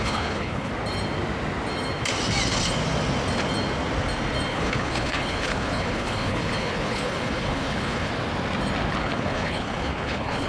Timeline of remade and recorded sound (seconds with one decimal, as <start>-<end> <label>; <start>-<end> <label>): 0.0-0.7 remade; 0.7-4.5 recorded; 4.5-8.1 remade; 8.1-9.0 recorded; 9.0-10.5 remade